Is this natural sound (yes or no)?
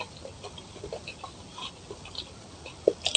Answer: yes